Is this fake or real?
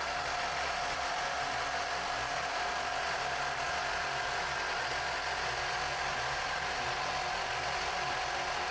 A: real